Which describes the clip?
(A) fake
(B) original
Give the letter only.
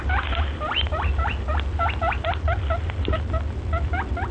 B